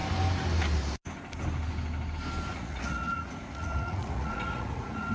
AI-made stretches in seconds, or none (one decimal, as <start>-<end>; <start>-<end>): 2.5-5.1